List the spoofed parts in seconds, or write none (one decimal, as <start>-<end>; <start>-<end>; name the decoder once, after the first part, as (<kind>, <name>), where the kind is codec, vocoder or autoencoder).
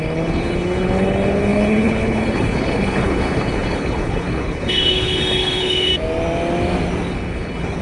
0.0-5.9 (codec, HILCodec); 7.1-7.8